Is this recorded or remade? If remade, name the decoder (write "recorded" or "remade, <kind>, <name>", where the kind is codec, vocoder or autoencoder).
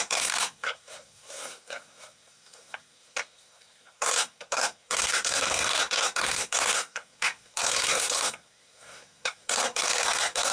remade, codec, SNAC